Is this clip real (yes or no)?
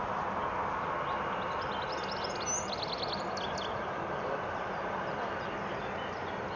yes